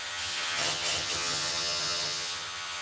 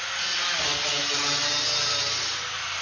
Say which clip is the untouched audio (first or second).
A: second